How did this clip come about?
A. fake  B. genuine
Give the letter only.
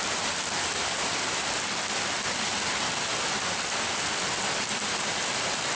B